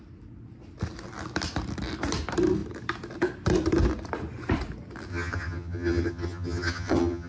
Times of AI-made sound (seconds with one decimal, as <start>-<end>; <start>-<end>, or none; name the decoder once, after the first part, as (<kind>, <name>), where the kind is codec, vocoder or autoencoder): 5.1-7.3 (vocoder, HiFi-GAN)